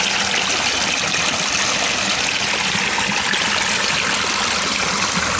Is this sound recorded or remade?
recorded